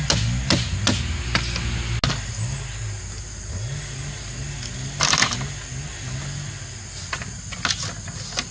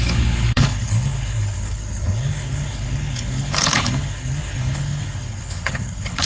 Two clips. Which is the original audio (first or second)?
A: first